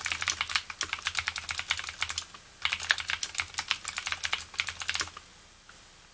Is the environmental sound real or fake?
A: real